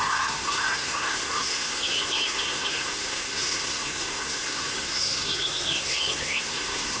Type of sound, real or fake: fake